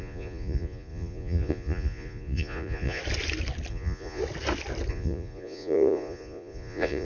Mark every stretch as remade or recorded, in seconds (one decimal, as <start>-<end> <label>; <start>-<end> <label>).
0.0-3.0 remade; 3.0-3.7 recorded; 3.7-4.2 remade; 4.2-4.9 recorded; 4.9-7.0 remade